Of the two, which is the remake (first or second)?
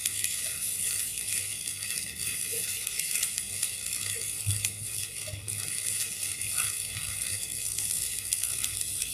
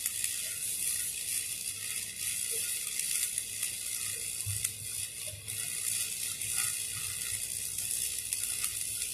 first